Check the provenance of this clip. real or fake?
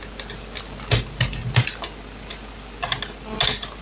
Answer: real